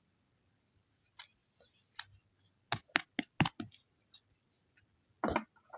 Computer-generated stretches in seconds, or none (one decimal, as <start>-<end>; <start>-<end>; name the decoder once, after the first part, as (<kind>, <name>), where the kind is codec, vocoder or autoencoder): none